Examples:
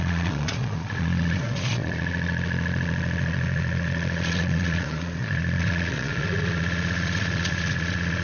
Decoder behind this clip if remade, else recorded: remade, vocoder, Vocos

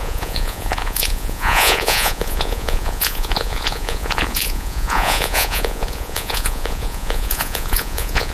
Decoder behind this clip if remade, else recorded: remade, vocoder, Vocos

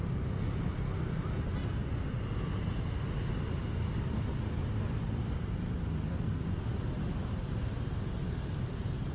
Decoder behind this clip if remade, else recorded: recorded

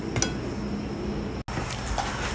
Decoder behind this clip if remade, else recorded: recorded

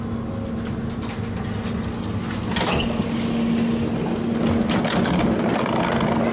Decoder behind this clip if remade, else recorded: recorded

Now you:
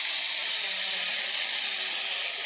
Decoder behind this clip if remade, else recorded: recorded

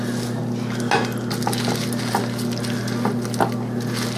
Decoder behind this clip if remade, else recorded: recorded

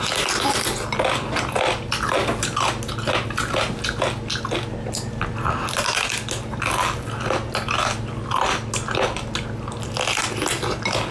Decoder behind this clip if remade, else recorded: recorded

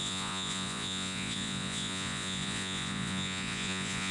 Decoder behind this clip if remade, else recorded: remade, vocoder, Vocos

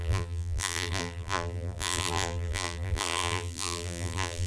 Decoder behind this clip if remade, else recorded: remade, vocoder, BigVGAN v2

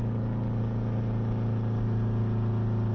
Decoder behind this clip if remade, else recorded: recorded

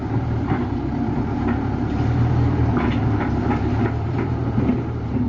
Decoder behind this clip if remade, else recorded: remade, vocoder, BigVGAN v2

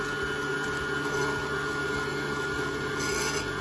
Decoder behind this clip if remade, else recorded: recorded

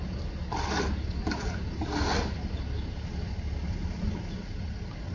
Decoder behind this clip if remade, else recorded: recorded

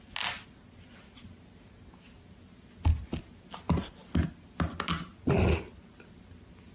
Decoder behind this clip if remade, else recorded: recorded